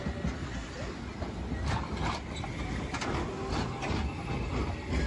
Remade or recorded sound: recorded